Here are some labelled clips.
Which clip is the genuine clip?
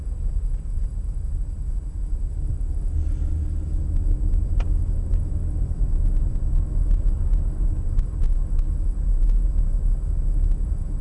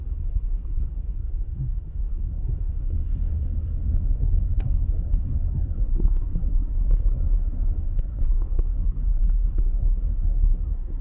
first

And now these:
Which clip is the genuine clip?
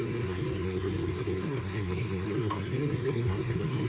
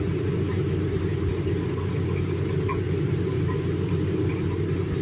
second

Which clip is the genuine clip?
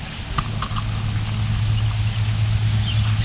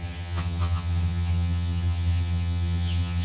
first